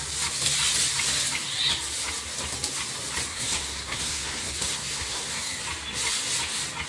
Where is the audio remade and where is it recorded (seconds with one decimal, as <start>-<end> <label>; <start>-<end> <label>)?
0.0-3.3 recorded; 3.3-5.6 remade; 5.6-6.9 recorded